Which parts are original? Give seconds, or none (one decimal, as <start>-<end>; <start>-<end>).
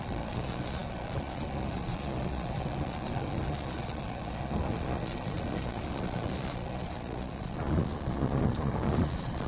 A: none